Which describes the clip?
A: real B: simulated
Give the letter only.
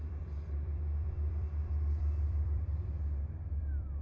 B